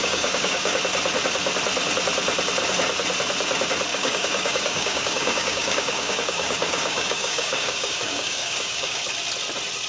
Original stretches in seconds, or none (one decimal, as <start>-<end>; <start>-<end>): 0.8-3.9; 9.0-9.9